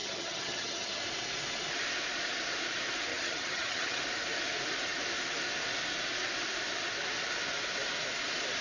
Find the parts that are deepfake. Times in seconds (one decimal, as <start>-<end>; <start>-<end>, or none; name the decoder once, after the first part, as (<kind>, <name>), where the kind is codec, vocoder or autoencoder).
0.0-1.0 (vocoder, HiFi-GAN); 3.1-4.0